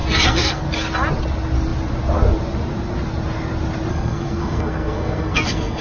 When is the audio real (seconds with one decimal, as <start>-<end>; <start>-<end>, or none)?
0.6-3.9